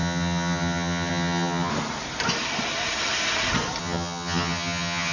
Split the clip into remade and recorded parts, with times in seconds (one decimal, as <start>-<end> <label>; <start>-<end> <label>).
0.0-1.7 remade; 1.7-3.8 recorded; 3.8-5.1 remade